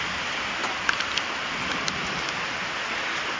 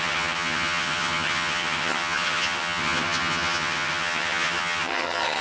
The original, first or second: first